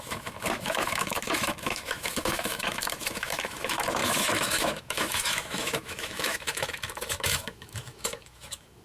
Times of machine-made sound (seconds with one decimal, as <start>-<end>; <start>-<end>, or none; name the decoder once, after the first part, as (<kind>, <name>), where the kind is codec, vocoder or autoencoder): 0.0-8.8 (autoencoder, DAC-VAE)